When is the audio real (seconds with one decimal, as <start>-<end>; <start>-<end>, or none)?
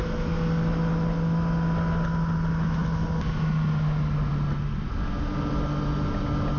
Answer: 0.0-6.6